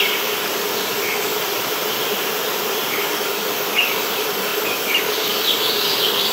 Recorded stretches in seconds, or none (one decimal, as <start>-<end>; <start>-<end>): 1.3-2.9